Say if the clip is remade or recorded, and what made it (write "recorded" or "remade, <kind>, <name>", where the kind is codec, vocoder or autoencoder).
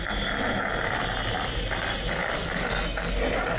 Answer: recorded